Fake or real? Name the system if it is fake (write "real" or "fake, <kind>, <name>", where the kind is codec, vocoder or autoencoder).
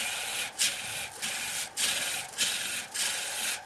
real